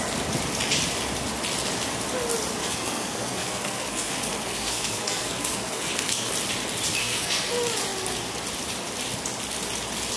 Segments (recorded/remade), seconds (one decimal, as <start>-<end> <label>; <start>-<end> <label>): 0.0-2.6 recorded; 2.6-6.3 remade; 6.3-7.0 recorded; 7.0-7.5 remade; 7.5-10.2 recorded

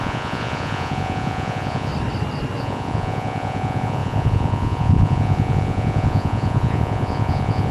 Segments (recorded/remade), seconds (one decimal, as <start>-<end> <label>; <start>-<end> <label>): 0.0-1.9 remade; 1.9-2.6 recorded; 2.6-7.7 remade

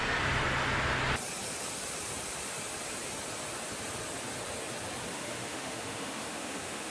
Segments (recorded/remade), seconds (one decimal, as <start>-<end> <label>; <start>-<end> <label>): 0.0-5.1 recorded; 5.1-6.9 remade

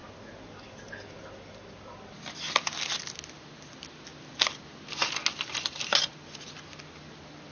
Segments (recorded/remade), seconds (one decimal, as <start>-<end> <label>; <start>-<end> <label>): 0.0-1.8 remade; 1.8-7.5 recorded